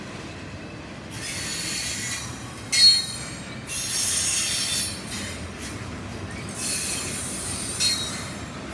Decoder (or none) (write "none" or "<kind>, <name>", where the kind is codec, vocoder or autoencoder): none